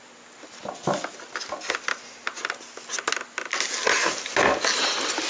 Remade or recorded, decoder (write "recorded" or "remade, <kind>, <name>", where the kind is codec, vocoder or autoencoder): recorded